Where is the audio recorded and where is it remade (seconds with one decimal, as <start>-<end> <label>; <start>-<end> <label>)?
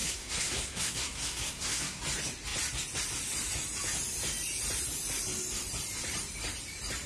0.0-2.0 remade; 2.0-7.1 recorded